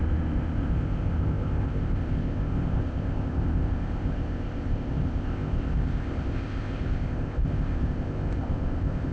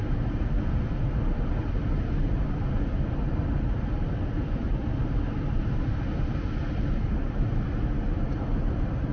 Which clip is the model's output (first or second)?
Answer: first